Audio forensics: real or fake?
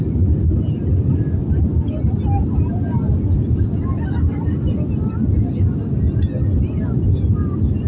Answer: real